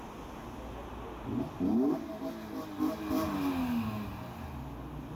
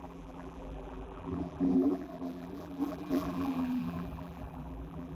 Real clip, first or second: first